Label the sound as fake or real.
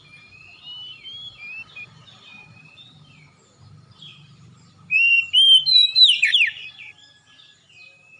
fake